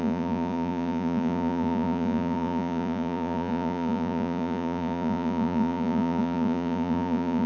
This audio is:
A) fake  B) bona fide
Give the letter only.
A